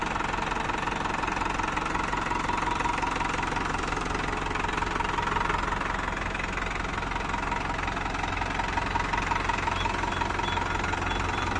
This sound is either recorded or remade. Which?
recorded